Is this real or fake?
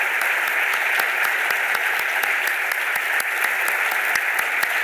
real